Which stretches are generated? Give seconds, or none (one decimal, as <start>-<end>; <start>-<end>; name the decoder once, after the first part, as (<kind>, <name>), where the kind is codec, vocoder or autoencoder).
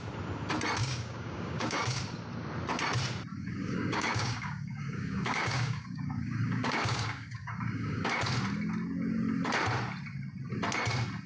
0.8-2.0 (codec, DAC); 3.3-8.1